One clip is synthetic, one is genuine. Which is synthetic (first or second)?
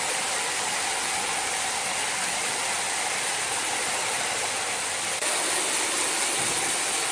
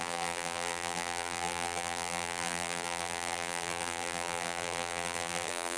second